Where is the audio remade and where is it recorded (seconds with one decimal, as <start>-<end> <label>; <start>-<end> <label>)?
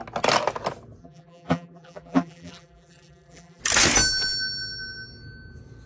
0.0-1.0 recorded; 1.0-3.6 remade; 3.6-5.9 recorded